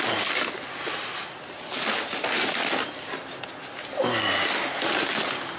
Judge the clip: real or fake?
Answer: real